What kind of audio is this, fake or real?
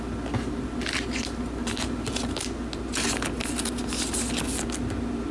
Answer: real